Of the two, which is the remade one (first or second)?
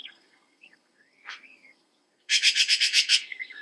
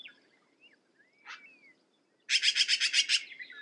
first